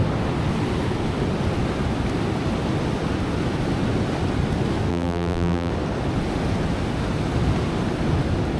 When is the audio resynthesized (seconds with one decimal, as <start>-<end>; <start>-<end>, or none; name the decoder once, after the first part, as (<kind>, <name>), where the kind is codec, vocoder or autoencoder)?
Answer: 4.9-5.7 (vocoder, BigVGAN v2)